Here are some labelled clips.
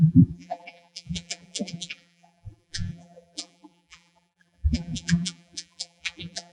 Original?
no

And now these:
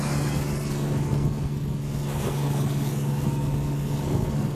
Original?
no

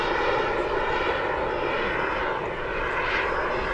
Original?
yes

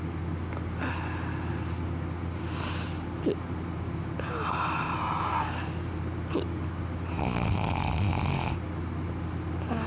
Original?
yes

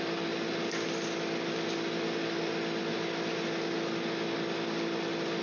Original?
yes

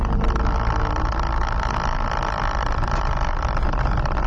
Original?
yes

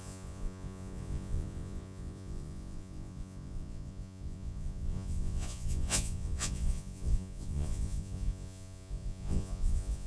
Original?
no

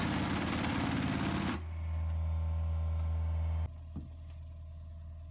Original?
yes